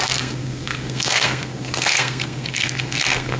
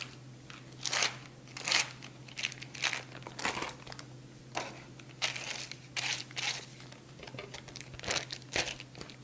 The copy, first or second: first